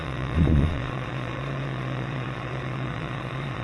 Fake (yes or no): yes